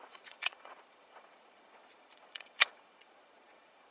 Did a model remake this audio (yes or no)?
yes